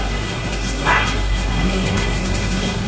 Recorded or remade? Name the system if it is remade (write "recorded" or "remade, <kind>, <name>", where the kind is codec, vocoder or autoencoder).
remade, codec, SNAC